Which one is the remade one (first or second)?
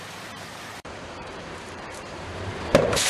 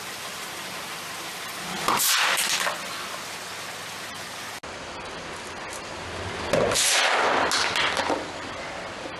first